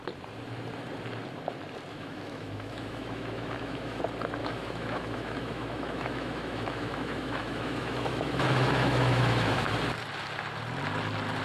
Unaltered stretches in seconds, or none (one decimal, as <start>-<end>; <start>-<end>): 0.0-1.9; 4.0-4.4; 9.7-11.4